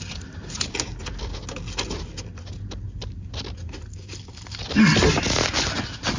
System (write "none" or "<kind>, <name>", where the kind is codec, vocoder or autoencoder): none